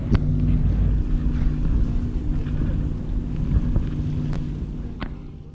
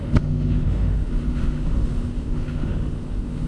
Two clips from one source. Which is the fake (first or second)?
second